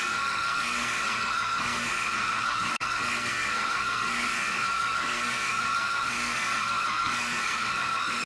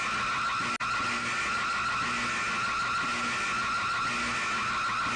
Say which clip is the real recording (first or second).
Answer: second